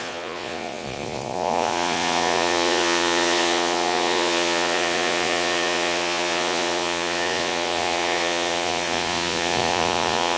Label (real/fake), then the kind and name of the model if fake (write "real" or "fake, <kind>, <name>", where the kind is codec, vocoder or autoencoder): fake, vocoder, Vocos